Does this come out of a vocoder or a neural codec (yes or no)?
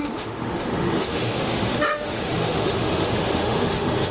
yes